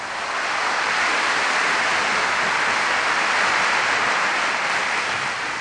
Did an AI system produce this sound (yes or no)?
no